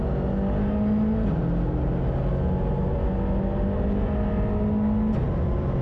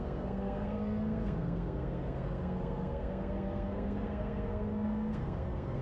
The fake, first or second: second